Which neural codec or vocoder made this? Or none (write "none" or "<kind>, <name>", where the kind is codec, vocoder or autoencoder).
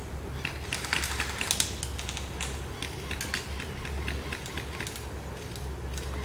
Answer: none